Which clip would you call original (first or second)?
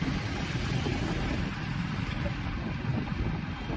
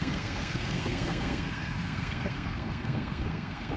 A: first